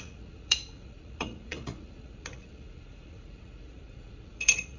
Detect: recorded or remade remade